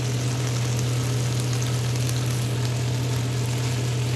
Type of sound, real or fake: real